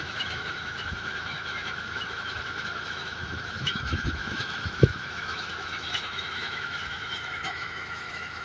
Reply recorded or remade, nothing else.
remade